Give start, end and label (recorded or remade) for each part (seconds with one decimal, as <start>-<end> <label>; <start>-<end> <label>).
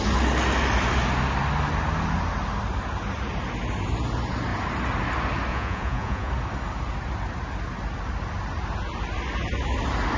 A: 0.0-5.5 recorded; 5.5-6.3 remade; 6.3-10.2 recorded